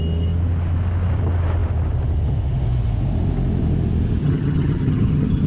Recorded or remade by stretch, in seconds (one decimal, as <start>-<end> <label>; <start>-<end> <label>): 0.0-4.2 recorded; 4.2-5.5 remade